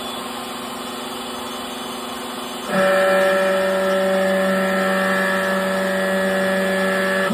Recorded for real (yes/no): yes